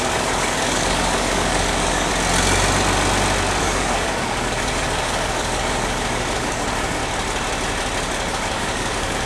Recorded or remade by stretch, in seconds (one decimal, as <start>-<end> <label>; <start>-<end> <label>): 0.0-2.1 remade; 2.1-3.6 recorded; 3.6-7.0 remade; 7.0-8.3 recorded; 8.3-9.3 remade